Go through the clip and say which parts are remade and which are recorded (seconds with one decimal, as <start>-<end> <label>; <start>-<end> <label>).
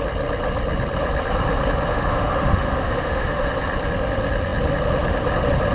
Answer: 0.0-1.9 recorded; 1.9-3.5 remade; 3.5-5.7 recorded